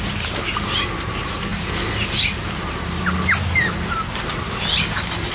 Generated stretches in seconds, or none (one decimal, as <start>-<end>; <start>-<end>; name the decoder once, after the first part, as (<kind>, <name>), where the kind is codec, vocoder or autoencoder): none